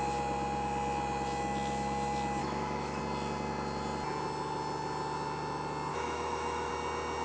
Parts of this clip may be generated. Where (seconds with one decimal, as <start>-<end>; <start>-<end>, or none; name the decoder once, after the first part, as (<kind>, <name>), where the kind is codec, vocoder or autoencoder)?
2.4-3.0 (autoencoder, DAC-VAE); 5.9-6.7